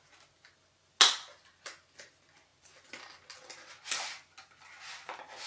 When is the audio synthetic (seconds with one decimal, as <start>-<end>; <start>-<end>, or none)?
none